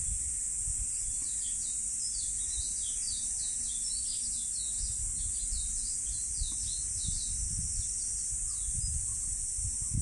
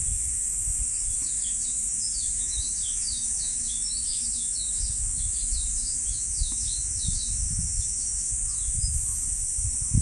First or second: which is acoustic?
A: first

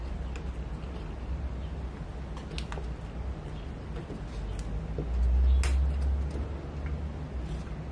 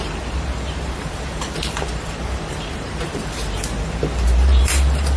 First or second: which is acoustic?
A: first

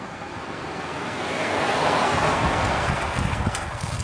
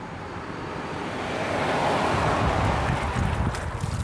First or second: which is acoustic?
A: second